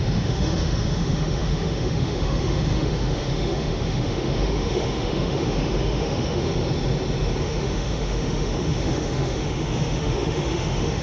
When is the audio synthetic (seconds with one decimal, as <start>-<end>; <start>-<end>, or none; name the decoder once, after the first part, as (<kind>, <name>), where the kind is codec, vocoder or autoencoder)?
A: 0.0-6.5 (autoencoder, DAC-VAE); 7.4-11.0